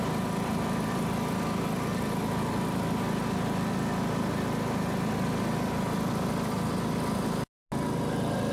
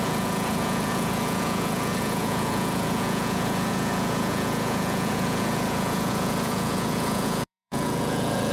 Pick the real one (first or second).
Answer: first